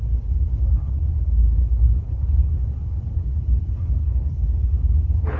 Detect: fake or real fake